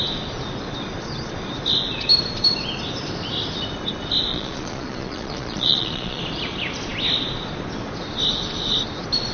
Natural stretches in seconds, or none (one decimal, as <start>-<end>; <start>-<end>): 0.0-4.3; 6.2-9.3